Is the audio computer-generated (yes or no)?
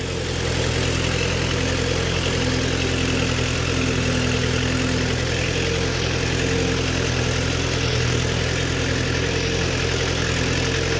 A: no